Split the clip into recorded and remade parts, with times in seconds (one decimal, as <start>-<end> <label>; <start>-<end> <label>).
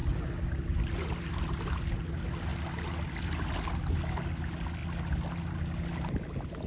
0.0-6.7 recorded